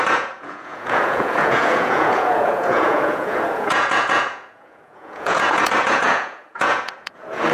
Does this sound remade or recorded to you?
remade